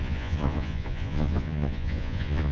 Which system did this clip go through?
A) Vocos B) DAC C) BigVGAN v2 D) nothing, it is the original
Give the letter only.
A